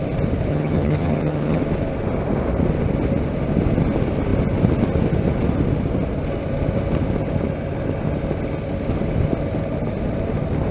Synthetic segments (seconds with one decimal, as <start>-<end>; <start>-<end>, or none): 0.5-1.6